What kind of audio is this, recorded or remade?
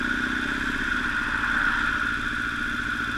recorded